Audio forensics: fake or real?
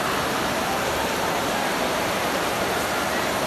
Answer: fake